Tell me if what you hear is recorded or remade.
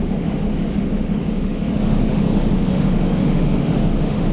remade